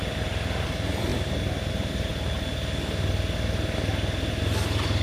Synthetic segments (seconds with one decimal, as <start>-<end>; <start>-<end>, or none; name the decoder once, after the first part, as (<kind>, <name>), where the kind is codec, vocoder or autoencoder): 0.0-1.1 (vocoder, BigVGAN v2); 1.7-2.1; 4.4-5.0